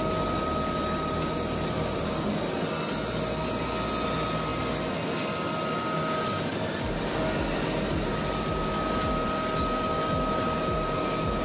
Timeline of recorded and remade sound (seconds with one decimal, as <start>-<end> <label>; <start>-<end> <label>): 0.0-11.4 recorded